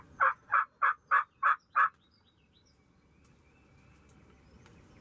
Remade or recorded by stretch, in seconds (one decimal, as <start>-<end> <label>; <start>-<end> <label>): 0.0-0.5 recorded; 0.5-3.5 remade; 3.5-5.0 recorded